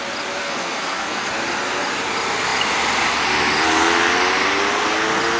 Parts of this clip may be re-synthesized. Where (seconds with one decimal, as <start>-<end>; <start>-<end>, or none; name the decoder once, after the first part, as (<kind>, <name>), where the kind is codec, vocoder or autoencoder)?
0.4-1.3 (codec, SNAC)

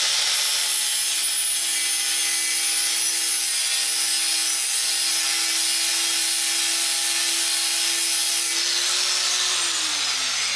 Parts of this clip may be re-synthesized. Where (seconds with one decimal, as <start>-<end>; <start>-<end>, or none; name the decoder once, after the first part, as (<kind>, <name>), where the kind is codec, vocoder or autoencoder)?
none

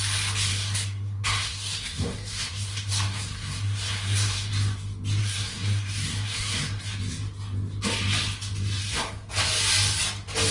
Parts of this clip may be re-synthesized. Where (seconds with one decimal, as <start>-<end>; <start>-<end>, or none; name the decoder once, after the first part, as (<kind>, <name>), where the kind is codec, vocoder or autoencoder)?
0.5-4.5 (codec, SNAC); 5.2-6.8; 8.8-9.3